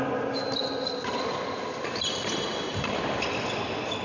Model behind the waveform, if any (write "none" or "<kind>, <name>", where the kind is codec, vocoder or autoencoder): none